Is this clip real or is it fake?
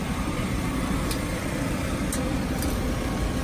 fake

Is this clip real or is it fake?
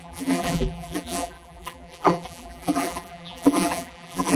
fake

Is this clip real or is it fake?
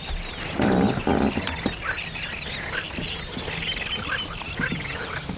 real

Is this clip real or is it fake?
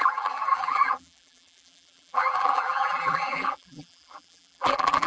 fake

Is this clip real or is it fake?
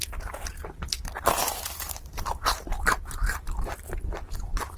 fake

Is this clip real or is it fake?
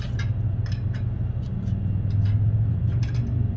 real